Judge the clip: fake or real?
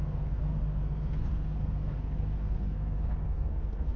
fake